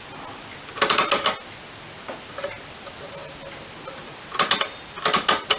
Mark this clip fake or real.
real